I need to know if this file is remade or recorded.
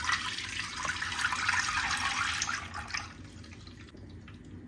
recorded